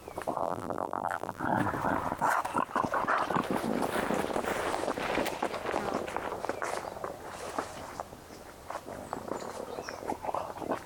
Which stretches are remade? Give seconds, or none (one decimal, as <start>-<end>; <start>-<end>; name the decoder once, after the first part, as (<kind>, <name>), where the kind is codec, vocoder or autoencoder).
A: 0.4-1.4 (vocoder, BigVGAN v2)